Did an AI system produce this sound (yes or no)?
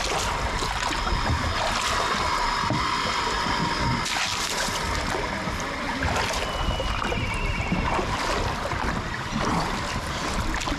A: no